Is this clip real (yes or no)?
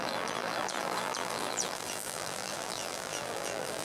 no